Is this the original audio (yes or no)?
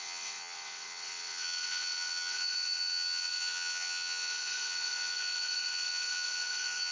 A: no